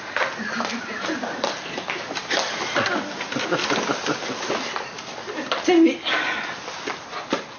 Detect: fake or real real